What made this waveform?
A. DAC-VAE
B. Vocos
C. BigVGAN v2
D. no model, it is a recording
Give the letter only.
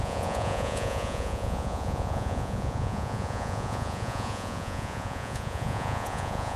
B